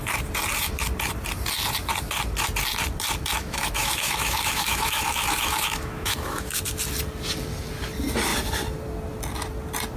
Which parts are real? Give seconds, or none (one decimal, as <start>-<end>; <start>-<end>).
0.0-3.4; 6.6-10.0